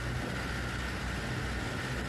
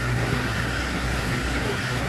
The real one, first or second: first